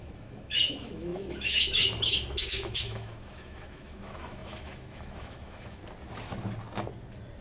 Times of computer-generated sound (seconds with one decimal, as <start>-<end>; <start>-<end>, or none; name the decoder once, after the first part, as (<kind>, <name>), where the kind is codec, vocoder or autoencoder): 0.0-5.8 (autoencoder, DAC-VAE)

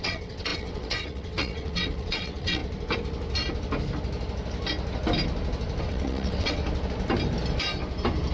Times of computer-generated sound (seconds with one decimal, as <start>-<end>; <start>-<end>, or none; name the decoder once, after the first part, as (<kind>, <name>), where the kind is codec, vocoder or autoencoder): 0.0-2.6 (vocoder, WaveNeXt); 5.8-6.6

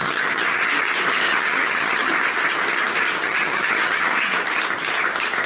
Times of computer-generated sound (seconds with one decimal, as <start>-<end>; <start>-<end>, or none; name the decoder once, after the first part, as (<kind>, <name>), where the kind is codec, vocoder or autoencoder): 0.0-0.7 (vocoder, HiFi-GAN); 1.3-2.1; 3.2-4.2

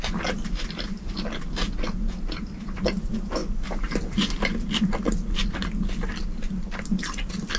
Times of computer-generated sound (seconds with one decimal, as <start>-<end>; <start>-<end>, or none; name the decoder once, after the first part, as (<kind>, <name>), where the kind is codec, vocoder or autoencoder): none